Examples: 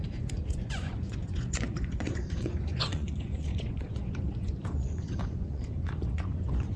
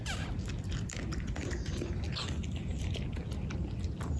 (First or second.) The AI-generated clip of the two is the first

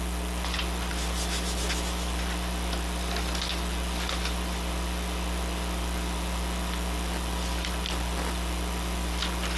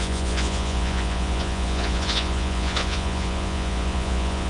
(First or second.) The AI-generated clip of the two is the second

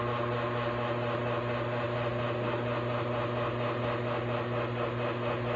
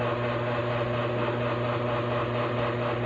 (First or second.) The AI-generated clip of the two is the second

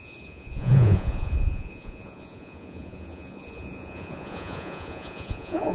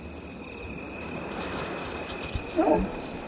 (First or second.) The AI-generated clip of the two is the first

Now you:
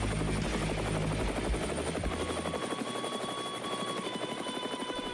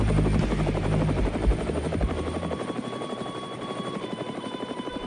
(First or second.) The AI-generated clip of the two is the second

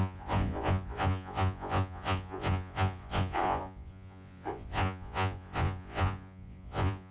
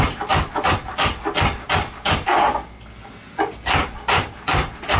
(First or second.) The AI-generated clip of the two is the first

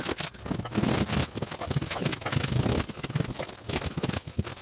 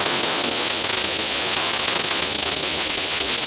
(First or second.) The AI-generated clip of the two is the first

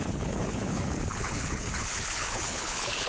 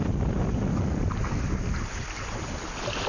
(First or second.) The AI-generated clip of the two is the first